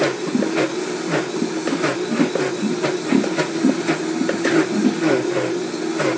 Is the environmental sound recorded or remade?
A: recorded